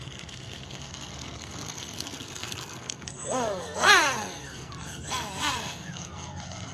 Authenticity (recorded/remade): remade